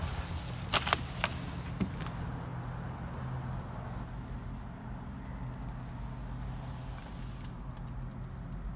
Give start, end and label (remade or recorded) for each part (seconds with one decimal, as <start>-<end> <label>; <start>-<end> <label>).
0.0-8.8 recorded

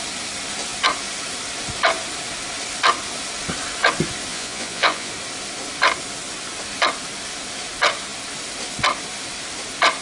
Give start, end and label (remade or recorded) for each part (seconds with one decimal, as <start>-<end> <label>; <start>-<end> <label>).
0.0-4.3 recorded; 4.3-5.1 remade; 5.1-10.0 recorded

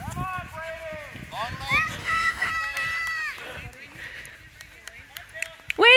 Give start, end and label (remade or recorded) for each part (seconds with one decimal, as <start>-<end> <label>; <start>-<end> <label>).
0.0-2.0 recorded; 2.0-2.5 remade; 2.5-6.0 recorded

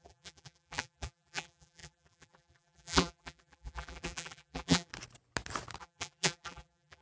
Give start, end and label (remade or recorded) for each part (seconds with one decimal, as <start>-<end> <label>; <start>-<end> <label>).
0.0-4.9 remade; 4.9-5.8 recorded; 5.8-7.0 remade